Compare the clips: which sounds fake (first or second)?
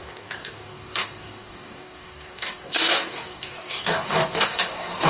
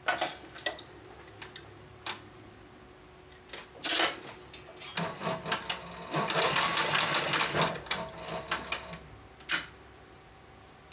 first